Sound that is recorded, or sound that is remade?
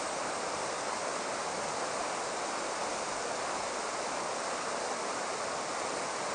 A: recorded